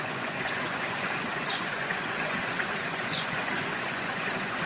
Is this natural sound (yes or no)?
no